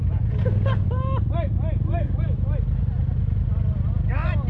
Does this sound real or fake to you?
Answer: real